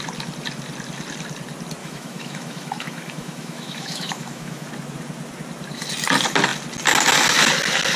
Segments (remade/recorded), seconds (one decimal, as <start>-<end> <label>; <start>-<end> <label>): 0.0-1.8 recorded; 1.8-4.7 remade; 4.7-8.0 recorded